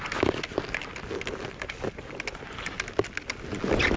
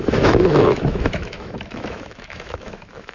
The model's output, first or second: second